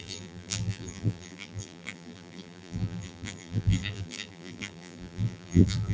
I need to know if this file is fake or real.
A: fake